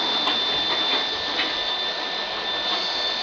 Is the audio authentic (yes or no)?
yes